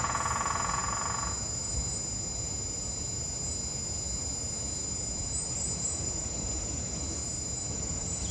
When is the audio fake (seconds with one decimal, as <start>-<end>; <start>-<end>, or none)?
0.0-0.8; 5.5-7.2; 7.7-8.3